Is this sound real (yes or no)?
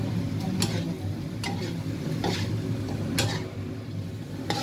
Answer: yes